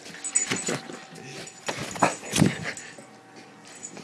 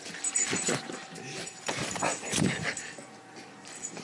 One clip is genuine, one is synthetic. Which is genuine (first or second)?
first